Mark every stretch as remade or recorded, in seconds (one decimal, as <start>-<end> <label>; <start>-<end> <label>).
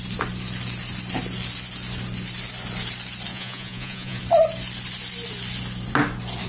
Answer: 0.0-3.3 recorded; 3.3-4.2 remade; 4.2-6.5 recorded